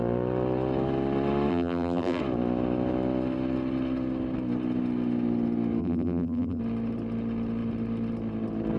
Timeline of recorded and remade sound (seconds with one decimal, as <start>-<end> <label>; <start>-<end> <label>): 0.0-1.5 recorded; 1.5-2.2 remade; 2.2-5.8 recorded; 5.8-6.6 remade; 6.6-8.8 recorded